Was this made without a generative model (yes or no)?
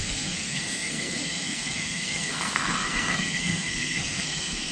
no